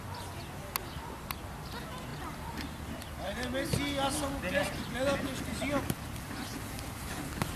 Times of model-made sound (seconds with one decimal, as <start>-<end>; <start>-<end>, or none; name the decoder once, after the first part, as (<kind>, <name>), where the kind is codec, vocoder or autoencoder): none